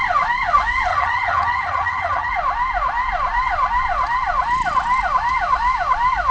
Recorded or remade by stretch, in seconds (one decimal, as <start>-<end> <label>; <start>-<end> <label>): 0.0-0.9 recorded; 0.9-2.3 remade; 2.3-6.3 recorded

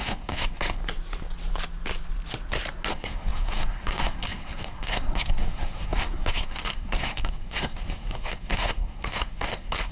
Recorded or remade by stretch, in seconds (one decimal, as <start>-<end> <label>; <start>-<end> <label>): 0.0-0.8 remade; 0.8-2.9 recorded; 2.9-9.9 remade

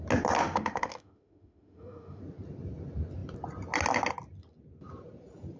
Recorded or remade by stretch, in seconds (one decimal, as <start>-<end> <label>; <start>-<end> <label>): 0.0-0.4 recorded; 0.4-2.2 remade; 2.2-5.6 recorded